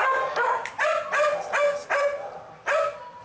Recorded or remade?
recorded